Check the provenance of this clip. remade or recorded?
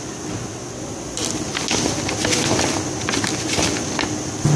recorded